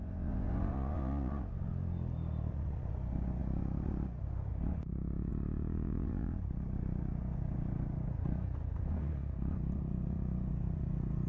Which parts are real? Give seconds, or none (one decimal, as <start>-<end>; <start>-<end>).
1.7-2.5